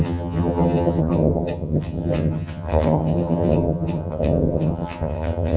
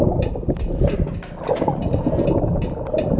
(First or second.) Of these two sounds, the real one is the second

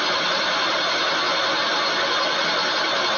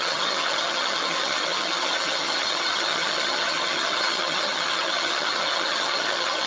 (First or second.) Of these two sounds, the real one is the first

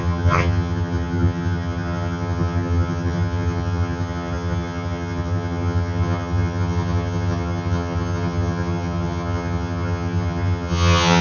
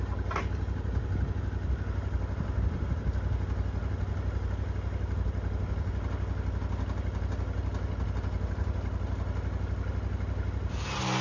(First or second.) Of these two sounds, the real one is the second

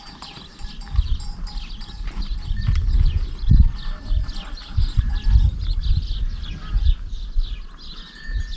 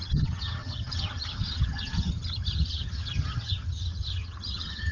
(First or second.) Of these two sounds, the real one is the first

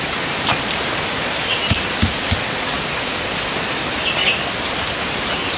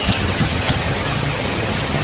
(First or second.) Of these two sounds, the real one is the first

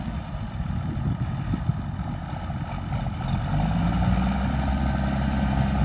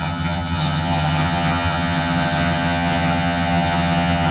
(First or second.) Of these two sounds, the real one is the first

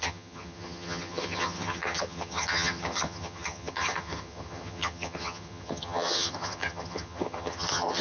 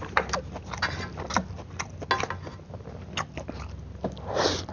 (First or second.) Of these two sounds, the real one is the second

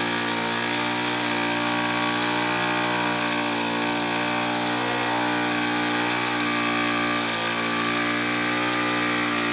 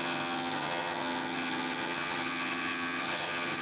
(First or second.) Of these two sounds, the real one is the first